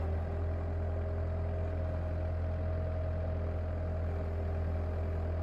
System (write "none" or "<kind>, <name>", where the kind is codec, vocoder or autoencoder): none